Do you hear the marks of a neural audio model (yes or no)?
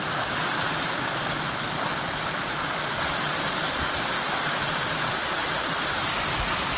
no